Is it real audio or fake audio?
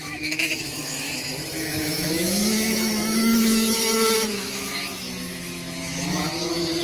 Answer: fake